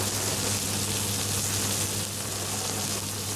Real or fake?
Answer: real